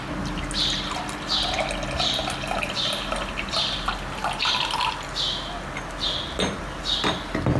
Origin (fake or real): real